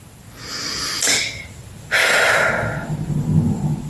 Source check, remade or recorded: recorded